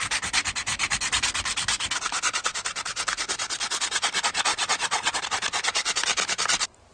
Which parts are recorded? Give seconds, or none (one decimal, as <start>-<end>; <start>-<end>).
0.0-4.5; 5.2-6.9